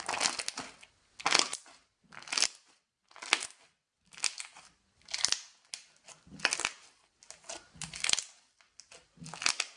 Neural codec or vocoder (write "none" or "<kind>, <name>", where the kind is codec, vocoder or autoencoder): none